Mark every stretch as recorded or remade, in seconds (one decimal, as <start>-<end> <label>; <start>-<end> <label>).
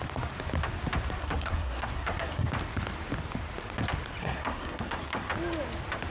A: 0.0-1.2 recorded; 1.2-2.5 remade; 2.5-4.2 recorded; 4.2-5.3 remade; 5.3-6.1 recorded